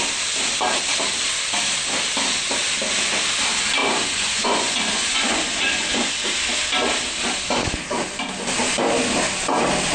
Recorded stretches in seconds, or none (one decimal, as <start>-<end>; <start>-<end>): 0.0-3.8; 6.1-9.9